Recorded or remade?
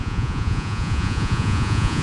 remade